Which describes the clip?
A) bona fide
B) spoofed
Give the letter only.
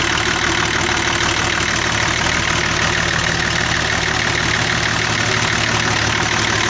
A